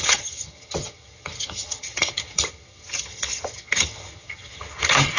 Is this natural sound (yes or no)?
no